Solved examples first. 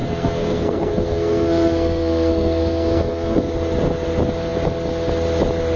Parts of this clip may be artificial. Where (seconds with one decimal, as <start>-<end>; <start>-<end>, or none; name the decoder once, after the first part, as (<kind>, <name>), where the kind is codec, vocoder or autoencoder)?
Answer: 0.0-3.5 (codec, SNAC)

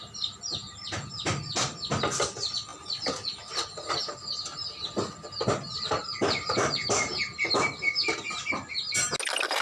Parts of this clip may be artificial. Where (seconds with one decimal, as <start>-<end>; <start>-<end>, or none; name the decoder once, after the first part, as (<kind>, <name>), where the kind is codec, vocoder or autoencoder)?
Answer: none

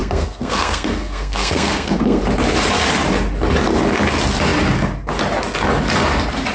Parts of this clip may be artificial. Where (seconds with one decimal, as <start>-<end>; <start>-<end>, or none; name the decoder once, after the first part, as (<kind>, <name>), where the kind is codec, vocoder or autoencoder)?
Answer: 0.0-2.2 (codec, SNAC)

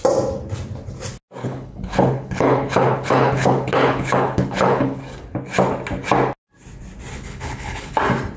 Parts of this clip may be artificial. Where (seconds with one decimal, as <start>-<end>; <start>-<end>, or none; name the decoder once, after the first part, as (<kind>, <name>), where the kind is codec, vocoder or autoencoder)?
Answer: 1.4-5.0 (codec, HILCodec); 7.1-8.0

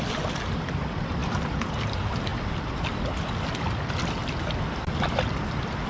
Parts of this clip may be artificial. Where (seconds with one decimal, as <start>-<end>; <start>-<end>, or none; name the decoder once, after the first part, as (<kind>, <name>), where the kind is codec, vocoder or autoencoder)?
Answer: none

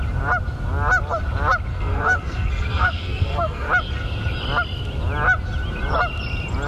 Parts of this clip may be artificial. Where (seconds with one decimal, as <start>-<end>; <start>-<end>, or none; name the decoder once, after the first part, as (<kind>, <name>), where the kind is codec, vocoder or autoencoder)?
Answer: 1.7-3.7 (codec, SNAC)